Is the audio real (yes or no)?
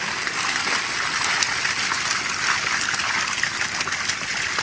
yes